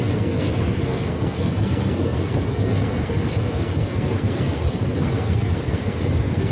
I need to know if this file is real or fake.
fake